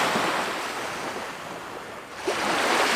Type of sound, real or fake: real